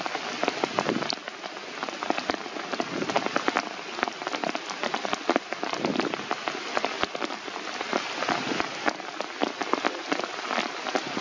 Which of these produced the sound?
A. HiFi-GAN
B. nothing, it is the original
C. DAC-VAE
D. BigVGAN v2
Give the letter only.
B